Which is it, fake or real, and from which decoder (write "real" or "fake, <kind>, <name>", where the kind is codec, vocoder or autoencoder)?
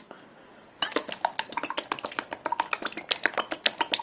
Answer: real